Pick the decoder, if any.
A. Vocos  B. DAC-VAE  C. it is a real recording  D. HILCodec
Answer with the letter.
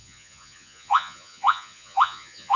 A